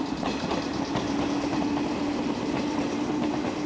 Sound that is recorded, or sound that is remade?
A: recorded